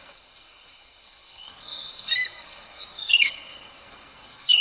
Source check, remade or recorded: remade